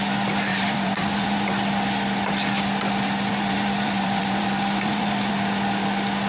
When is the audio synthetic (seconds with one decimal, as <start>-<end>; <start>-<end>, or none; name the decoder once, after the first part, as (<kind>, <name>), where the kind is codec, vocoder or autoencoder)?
0.5-1.5 (vocoder, BigVGAN v2); 3.3-5.3